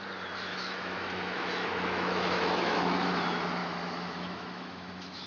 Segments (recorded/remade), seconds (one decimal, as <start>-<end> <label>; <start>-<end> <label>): 0.0-0.5 recorded; 0.5-3.1 remade; 3.1-3.6 recorded; 3.6-5.3 remade

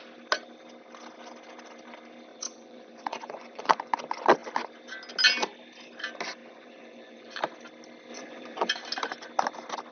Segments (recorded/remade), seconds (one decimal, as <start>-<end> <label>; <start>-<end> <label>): 0.0-2.3 recorded; 2.3-3.9 remade; 3.9-6.4 recorded; 6.4-7.4 remade; 7.4-8.1 recorded; 8.1-8.7 remade; 8.7-9.9 recorded

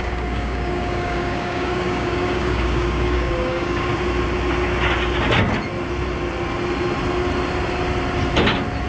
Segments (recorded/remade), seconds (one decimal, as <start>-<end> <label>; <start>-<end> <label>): 0.0-3.9 remade; 3.9-8.9 recorded

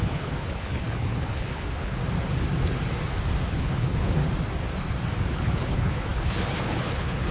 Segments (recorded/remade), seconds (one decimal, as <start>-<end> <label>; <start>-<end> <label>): 0.0-2.0 remade; 2.0-3.6 recorded; 3.6-4.2 remade; 4.2-5.3 recorded; 5.3-7.3 remade

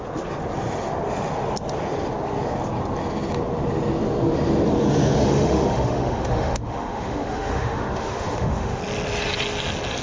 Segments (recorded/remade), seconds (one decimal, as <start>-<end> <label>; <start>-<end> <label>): 0.0-5.2 recorded; 5.2-8.8 remade; 8.8-10.0 recorded

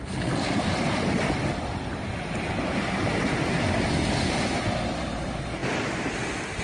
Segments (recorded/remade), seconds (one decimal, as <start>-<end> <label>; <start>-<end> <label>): 0.0-6.6 recorded

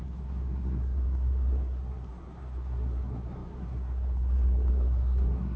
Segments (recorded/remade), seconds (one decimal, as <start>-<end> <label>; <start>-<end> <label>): 0.0-5.6 remade

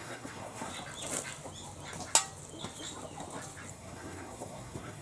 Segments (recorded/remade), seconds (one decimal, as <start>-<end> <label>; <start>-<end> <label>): 0.0-0.7 remade; 0.7-3.7 recorded; 3.7-5.0 remade